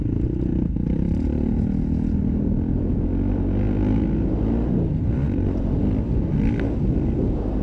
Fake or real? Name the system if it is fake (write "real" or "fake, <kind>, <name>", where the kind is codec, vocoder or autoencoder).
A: real